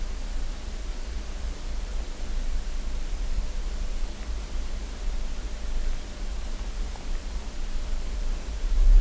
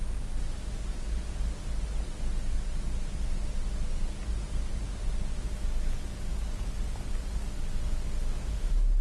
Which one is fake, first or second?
first